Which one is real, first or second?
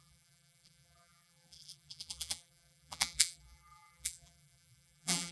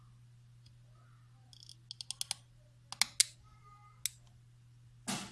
second